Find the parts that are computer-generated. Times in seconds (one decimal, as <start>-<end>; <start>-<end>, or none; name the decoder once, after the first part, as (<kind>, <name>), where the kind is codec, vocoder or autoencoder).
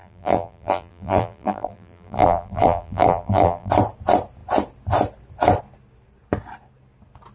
0.0-3.7 (vocoder, BigVGAN v2)